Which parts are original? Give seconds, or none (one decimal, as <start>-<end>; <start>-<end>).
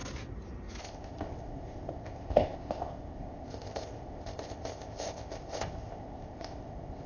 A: 0.0-0.8